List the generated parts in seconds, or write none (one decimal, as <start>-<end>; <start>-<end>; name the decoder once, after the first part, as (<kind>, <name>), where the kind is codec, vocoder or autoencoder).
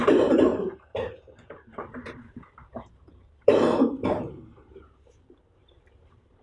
0.0-0.5 (vocoder, BigVGAN v2); 1.8-6.4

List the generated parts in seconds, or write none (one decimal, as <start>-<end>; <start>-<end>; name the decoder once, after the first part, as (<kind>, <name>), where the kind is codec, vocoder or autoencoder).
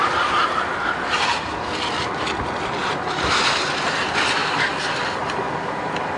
0.0-0.7 (vocoder, BigVGAN v2); 1.3-2.8; 3.8-6.2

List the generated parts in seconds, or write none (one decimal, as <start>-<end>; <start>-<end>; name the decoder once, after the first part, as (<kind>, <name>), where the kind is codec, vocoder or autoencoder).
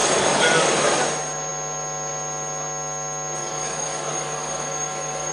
0.0-0.7 (codec, DAC); 3.4-5.3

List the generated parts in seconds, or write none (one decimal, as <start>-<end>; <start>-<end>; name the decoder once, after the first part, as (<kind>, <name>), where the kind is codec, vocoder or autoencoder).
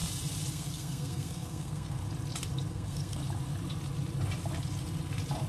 0.5-2.0 (codec, SNAC); 2.7-3.2